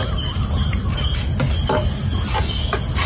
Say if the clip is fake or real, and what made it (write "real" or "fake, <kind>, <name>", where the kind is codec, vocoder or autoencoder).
real